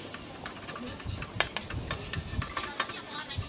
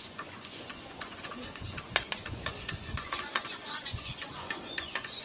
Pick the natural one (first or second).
first